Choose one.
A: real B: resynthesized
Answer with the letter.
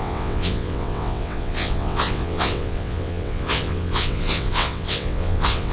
B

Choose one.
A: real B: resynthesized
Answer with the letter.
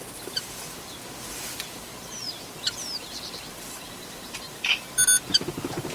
A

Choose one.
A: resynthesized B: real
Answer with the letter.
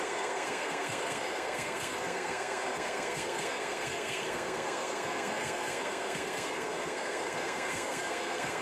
A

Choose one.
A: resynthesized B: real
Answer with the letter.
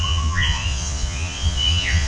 A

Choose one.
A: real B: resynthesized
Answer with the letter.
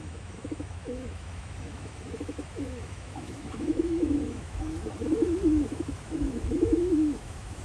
B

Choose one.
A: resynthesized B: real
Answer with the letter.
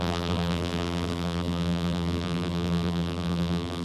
A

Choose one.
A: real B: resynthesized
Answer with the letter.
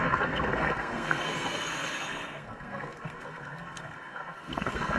B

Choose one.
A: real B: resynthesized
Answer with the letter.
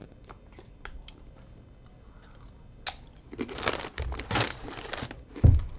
A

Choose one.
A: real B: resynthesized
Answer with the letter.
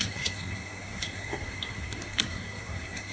B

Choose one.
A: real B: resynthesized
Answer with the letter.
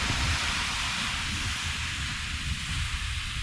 A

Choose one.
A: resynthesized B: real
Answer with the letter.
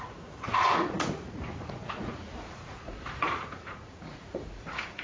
A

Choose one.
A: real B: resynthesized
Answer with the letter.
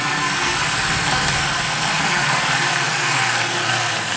B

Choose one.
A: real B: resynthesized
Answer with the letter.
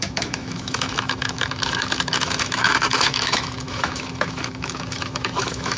B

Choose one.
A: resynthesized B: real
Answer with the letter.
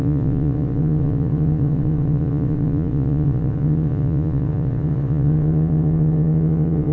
A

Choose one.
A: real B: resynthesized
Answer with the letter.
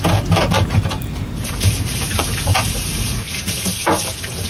B